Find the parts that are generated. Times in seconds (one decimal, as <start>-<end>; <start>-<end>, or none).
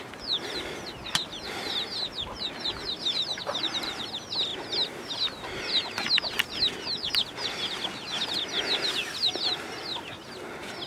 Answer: none